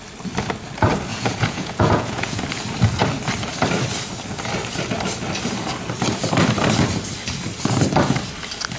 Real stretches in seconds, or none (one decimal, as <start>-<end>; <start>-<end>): 0.0-1.1; 2.4-8.8